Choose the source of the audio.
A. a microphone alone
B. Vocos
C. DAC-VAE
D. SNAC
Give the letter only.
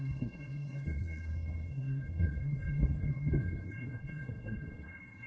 D